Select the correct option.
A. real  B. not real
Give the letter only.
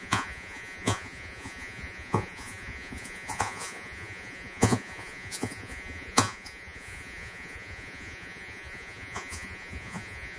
B